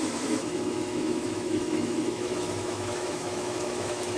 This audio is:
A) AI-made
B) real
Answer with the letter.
A